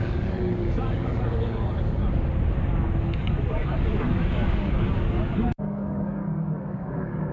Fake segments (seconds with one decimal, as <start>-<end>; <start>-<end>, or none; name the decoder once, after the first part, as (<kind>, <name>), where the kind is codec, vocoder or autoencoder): 0.0-2.0 (codec, DAC); 3.0-7.3